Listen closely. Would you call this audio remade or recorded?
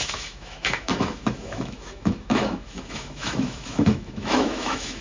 remade